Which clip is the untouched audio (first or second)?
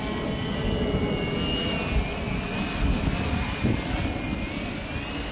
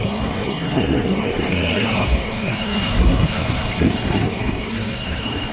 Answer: first